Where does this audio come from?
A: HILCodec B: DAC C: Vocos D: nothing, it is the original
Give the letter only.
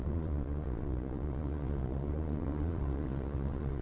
C